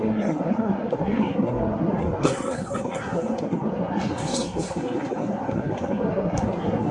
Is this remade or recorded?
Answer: remade